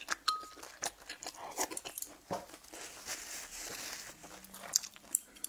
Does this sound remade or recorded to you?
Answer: recorded